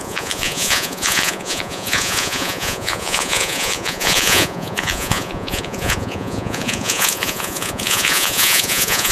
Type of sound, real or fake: fake